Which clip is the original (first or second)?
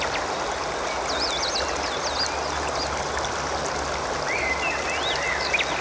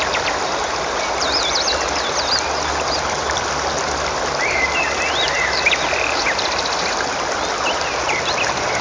first